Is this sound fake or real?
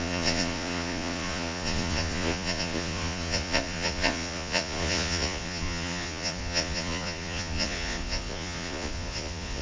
fake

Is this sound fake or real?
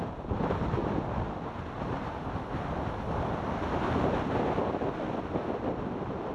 real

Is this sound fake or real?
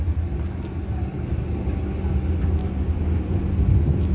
real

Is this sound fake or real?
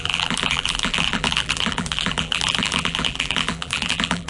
fake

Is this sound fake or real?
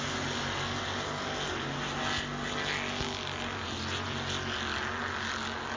real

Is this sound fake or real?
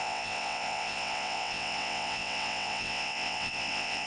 fake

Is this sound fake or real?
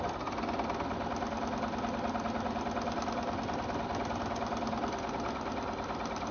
real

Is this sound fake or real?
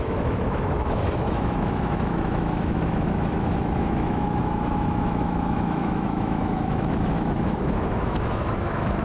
fake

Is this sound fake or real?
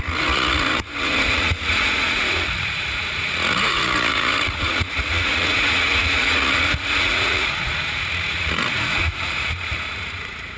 fake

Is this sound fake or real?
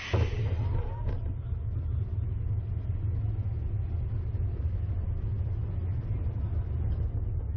real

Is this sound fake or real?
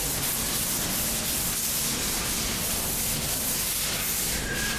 real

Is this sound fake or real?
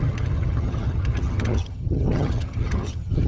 fake